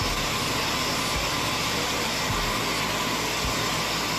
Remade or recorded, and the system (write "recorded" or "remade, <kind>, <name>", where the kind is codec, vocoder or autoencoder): recorded